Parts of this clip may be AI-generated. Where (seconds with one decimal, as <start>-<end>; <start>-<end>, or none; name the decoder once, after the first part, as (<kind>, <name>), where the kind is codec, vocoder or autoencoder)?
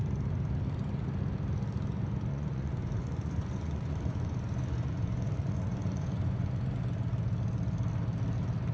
2.3-6.8 (vocoder, Vocos)